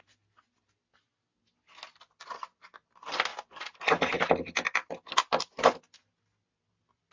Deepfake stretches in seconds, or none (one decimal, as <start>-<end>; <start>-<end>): none